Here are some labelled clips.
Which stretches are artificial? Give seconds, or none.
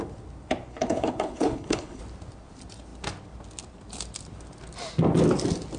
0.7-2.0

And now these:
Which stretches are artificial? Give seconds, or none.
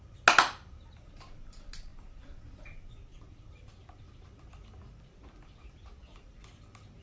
none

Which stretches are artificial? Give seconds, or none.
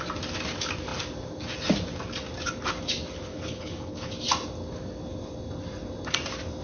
3.3-4.1